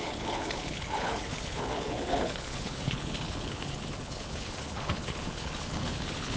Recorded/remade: remade